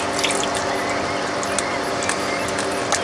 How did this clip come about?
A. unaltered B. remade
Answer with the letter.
A